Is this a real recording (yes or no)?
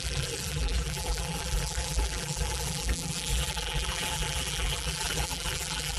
no